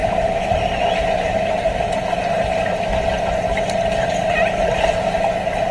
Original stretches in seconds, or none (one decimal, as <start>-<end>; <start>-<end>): 0.5-5.7

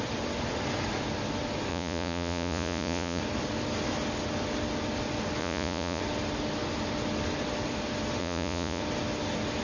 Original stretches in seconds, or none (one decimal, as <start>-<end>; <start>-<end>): 0.0-1.7; 3.2-5.4; 6.0-8.2; 8.8-9.6

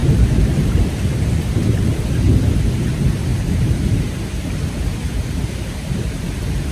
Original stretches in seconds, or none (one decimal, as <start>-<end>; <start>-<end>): 1.1-3.3

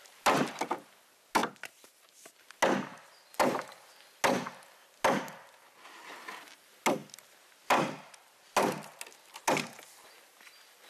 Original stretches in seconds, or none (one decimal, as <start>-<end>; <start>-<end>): 0.0-10.9

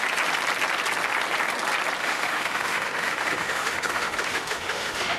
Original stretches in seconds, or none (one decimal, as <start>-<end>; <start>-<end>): 0.0-2.0